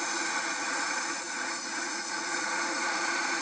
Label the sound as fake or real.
fake